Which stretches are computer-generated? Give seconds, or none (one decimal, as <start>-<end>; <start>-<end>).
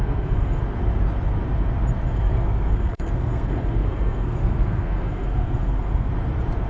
0.0-0.6; 2.1-6.1